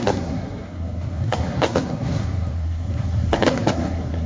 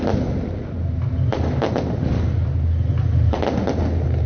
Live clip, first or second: second